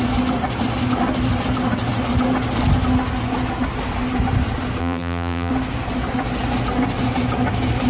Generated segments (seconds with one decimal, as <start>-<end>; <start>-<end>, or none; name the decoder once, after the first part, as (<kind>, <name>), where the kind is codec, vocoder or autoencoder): 4.8-5.5 (vocoder, BigVGAN v2)